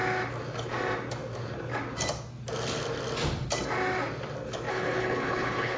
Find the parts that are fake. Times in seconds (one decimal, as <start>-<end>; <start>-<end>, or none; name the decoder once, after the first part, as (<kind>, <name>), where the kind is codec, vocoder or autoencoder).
4.7-5.8 (codec, HILCodec)